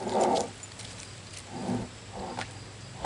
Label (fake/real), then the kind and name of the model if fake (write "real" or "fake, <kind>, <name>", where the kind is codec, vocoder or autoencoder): real